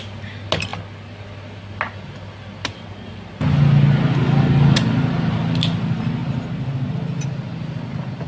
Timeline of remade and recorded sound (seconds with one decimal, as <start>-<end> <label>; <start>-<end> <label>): 0.0-8.3 recorded